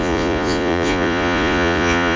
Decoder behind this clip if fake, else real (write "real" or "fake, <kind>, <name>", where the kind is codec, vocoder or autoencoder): fake, vocoder, Vocos